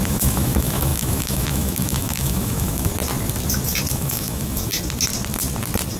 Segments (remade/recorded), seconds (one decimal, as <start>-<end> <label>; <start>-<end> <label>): 0.0-2.9 remade; 2.9-3.9 recorded; 3.9-4.7 remade; 4.7-6.0 recorded